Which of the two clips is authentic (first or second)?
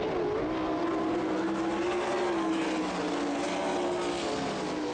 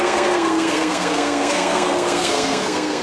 first